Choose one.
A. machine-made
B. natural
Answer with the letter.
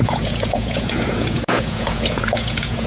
A